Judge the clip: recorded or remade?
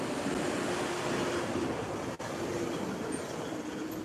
recorded